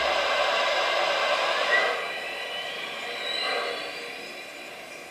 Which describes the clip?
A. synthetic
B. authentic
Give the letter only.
B